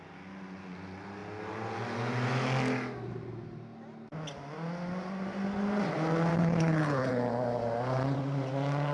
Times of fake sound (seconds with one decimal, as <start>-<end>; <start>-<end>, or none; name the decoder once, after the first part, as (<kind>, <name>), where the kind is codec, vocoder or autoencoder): 6.3-7.1 (codec, HILCodec)